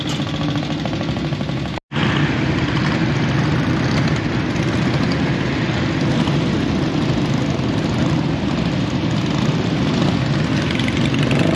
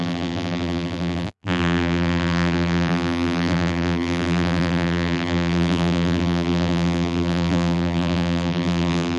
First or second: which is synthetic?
second